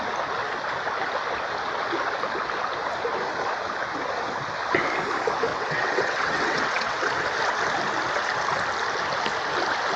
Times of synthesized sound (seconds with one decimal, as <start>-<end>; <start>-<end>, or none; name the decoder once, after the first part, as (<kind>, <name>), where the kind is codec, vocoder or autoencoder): 5.5-7.1 (vocoder, WaveNeXt)

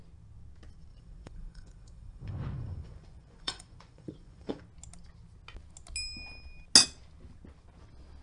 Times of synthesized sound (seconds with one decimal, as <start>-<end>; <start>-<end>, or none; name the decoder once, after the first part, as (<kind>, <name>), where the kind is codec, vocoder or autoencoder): 0.9-4.6 (vocoder, Vocos)

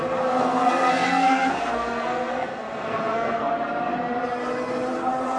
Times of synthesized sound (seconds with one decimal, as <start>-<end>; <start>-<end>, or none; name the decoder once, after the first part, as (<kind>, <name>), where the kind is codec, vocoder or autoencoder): 0.4-3.5 (codec, SNAC)

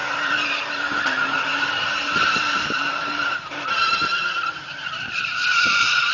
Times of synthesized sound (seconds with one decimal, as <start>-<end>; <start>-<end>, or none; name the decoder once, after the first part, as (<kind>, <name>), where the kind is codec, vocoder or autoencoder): 0.0-3.7 (vocoder, BigVGAN v2); 4.2-5.1

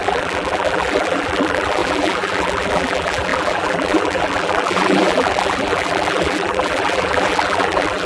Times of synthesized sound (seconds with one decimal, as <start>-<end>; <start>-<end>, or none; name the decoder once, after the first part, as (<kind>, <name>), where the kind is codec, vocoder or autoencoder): 0.0-8.1 (vocoder, BigVGAN v2)

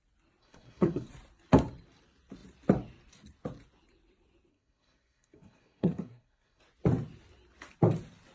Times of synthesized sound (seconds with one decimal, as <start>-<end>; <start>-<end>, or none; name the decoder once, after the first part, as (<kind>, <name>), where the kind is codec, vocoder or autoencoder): 0.4-1.1 (codec, SNAC); 4.5-6.6